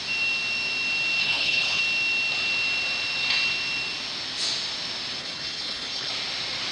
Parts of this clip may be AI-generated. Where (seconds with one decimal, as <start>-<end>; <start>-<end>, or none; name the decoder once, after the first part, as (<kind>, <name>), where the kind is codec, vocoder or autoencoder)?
1.2-1.8 (codec, HILCodec); 5.2-6.1